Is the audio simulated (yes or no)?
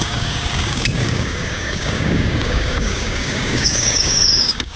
yes